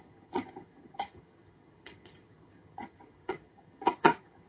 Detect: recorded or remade remade